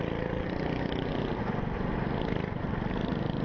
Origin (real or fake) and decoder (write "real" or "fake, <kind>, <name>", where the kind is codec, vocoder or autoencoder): real